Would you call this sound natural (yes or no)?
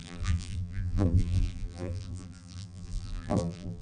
no